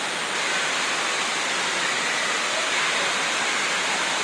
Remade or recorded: recorded